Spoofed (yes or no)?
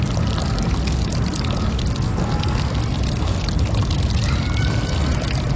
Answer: no